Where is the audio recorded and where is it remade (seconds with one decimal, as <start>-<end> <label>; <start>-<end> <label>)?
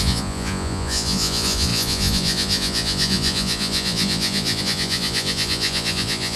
0.0-6.4 remade